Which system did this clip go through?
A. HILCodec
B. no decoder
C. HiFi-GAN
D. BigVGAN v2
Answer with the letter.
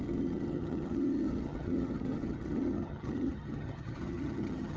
C